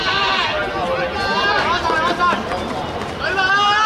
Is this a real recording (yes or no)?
yes